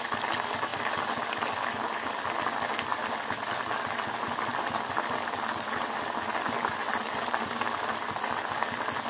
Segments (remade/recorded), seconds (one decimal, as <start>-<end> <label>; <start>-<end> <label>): 0.0-9.1 recorded